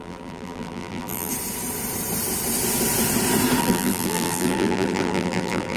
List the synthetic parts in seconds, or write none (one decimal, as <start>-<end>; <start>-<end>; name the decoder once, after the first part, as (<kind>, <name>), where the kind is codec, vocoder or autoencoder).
0.0-1.3 (vocoder, BigVGAN v2); 3.6-5.8